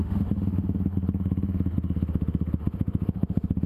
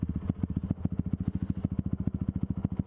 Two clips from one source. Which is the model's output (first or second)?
first